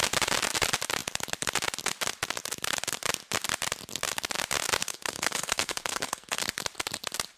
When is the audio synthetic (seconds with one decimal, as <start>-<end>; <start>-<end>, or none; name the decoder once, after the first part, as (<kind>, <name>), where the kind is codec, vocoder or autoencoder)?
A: 4.8-6.4 (codec, SNAC)